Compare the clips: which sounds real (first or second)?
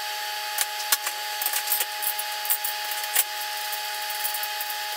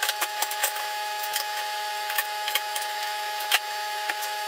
first